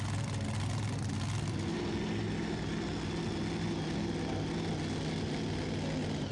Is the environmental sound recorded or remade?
recorded